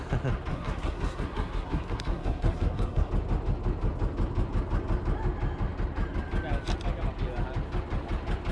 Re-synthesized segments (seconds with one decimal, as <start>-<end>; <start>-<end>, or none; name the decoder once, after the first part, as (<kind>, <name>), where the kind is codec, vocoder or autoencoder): 0.5-3.1 (codec, SNAC)